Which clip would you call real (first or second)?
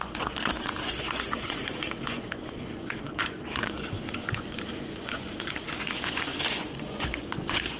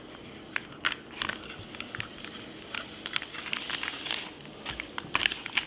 second